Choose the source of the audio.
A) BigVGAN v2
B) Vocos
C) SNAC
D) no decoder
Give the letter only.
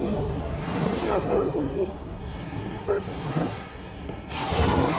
C